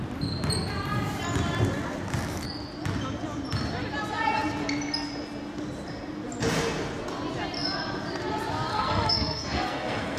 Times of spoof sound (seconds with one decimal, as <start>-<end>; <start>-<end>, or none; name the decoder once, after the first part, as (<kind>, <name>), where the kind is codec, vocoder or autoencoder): 8.7-10.2 (codec, SNAC)

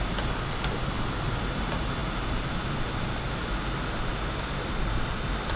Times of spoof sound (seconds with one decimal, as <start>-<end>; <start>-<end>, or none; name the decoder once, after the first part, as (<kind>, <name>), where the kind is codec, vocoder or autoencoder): none

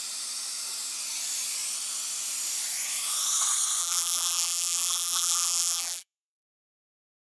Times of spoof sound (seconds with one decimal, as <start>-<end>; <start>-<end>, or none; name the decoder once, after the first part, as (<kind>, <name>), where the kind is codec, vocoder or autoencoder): 3.8-6.8 (vocoder, BigVGAN v2)

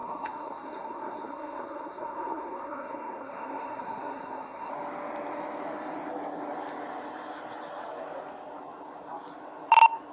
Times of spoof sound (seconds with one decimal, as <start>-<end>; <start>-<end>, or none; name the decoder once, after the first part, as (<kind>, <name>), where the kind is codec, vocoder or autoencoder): 0.0-4.7 (codec, SNAC)

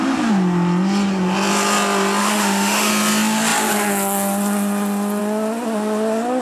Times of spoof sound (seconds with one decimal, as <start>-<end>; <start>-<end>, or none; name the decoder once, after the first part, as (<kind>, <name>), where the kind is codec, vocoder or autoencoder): 2.2-2.9 (autoencoder, DAC-VAE)